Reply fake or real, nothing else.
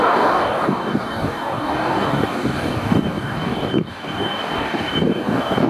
fake